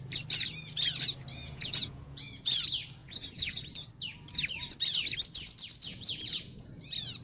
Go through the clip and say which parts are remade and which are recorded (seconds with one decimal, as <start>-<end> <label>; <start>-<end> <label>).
0.0-1.4 recorded; 1.4-2.6 remade; 2.6-3.0 recorded; 3.0-3.9 remade; 3.9-5.9 recorded; 5.9-6.8 remade; 6.8-7.2 recorded